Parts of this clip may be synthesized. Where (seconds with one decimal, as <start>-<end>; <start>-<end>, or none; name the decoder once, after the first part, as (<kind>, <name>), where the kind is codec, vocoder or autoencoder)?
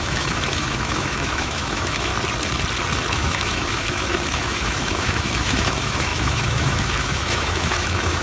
0.0-2.1 (autoencoder, DAC-VAE); 3.1-8.2